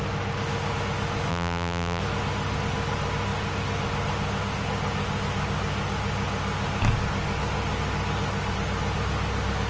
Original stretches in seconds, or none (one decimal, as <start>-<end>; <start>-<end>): 0.0-1.3; 2.0-9.7